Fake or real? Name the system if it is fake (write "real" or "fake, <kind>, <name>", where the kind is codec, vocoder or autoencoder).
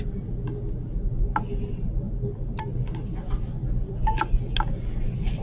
real